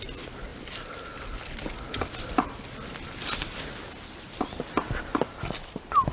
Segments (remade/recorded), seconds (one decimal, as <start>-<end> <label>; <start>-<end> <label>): 0.0-6.1 recorded